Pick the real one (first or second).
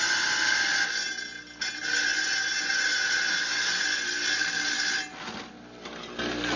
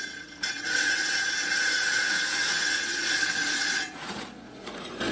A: first